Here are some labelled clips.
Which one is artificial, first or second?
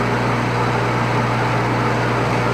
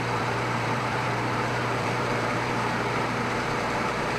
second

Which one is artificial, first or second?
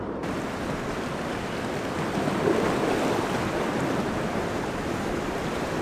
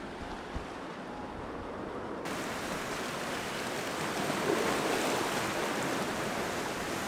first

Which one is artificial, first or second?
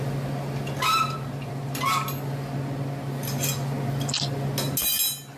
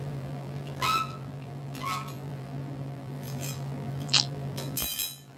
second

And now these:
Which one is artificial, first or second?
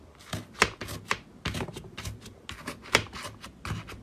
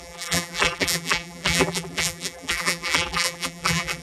second